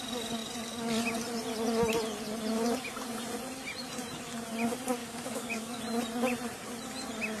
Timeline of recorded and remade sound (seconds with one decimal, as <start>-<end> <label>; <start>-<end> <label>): 0.0-5.0 recorded; 5.0-5.8 remade; 5.8-7.4 recorded